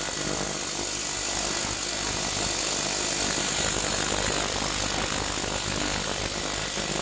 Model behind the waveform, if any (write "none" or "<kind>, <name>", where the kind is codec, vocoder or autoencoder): none